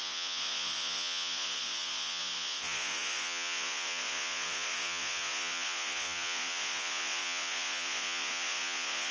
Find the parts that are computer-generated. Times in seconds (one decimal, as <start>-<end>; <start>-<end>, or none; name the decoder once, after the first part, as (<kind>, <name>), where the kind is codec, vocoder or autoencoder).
0.0-9.1 (vocoder, Vocos)